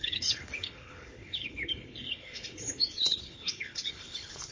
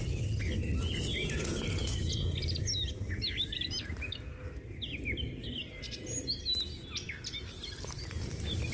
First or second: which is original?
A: second